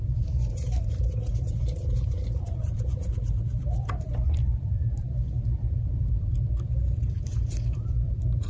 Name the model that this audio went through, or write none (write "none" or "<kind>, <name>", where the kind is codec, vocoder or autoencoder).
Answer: vocoder, BigVGAN v2